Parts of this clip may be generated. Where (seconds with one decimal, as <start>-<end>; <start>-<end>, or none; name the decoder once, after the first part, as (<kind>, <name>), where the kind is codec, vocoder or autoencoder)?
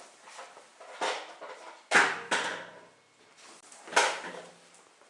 3.9-4.5 (vocoder, BigVGAN v2)